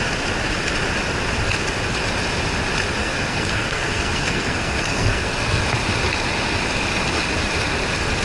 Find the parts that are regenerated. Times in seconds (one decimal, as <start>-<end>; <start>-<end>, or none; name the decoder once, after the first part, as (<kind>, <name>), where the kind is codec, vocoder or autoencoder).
3.0-5.6 (codec, SNAC)